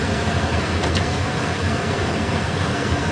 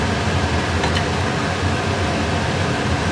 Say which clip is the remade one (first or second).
first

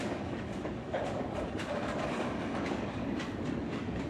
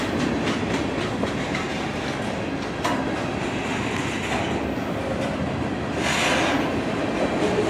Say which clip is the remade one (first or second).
first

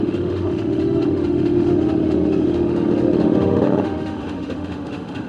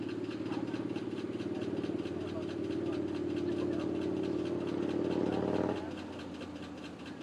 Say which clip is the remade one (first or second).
first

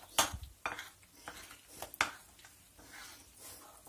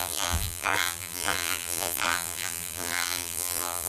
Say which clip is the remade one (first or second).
second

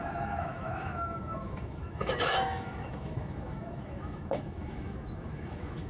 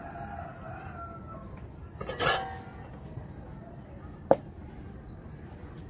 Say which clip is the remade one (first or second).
first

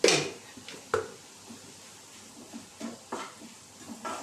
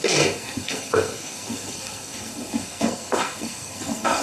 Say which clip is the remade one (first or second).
second